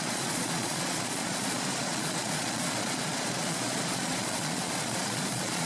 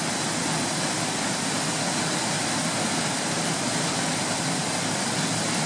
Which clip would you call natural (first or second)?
second